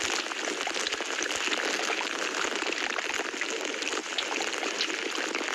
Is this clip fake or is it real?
real